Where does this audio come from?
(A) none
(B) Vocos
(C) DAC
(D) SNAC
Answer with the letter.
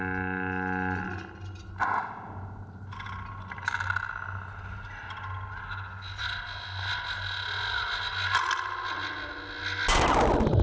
A